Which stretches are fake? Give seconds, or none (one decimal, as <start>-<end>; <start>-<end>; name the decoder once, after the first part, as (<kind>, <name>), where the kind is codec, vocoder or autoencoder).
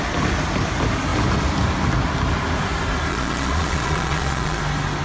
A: 3.1-4.6 (vocoder, Vocos)